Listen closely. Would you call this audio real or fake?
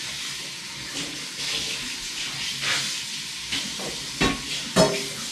real